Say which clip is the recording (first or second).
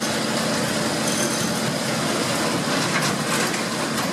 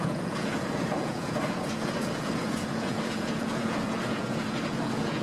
first